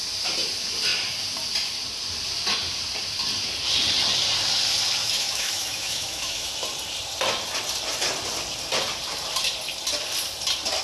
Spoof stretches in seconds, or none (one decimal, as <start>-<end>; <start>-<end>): 5.0-6.5